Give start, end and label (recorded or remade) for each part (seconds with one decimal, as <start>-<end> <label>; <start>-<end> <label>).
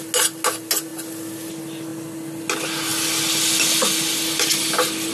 0.0-5.1 recorded